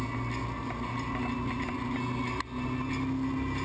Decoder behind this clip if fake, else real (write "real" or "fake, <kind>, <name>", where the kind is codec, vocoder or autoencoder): real